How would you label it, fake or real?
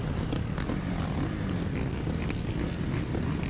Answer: real